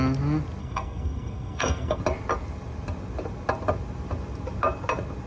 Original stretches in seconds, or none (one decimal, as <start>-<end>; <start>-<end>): 0.0-0.6; 2.0-5.3